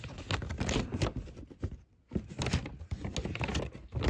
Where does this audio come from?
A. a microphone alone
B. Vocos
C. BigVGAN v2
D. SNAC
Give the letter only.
A